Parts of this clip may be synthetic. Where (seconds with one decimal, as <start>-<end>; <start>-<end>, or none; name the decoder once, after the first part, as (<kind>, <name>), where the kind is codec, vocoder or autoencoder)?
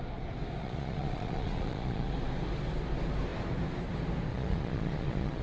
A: 0.6-2.1 (vocoder, Vocos); 4.3-5.4